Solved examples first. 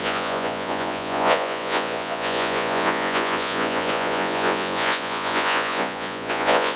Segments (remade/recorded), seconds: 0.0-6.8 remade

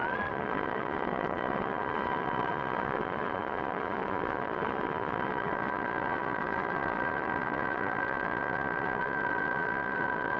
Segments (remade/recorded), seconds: 0.0-10.4 remade

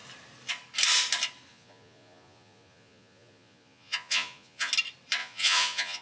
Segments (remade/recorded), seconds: 0.0-1.5 recorded; 1.5-4.7 remade; 4.7-5.2 recorded; 5.2-6.0 remade

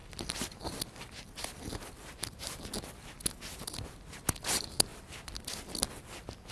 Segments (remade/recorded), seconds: 0.0-6.5 recorded

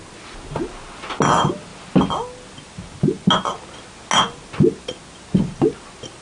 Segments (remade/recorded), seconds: 0.0-6.2 recorded

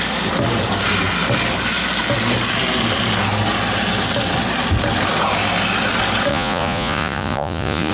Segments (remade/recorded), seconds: 0.0-6.3 recorded; 6.3-7.9 remade

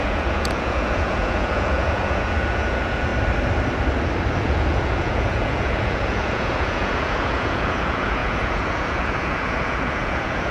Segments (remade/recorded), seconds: 0.0-3.1 remade; 3.1-4.4 recorded; 4.4-10.5 remade